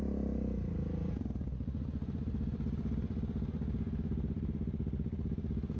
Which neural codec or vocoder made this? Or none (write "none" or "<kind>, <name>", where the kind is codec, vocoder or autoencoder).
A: none